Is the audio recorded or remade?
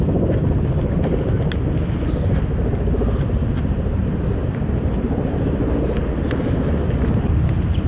recorded